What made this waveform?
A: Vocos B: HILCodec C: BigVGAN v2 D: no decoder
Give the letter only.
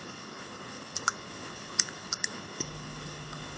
B